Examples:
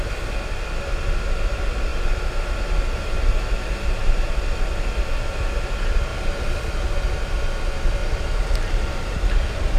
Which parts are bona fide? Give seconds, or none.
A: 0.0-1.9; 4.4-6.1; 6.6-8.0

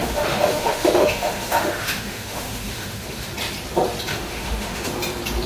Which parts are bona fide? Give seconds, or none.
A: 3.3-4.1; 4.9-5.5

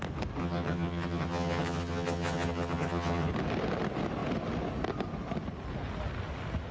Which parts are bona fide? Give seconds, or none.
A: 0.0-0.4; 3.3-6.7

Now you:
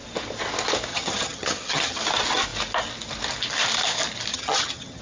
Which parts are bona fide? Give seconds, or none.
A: 0.0-0.9; 2.0-4.3

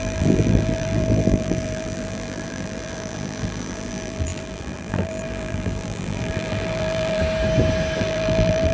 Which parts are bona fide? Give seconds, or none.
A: 7.2-8.0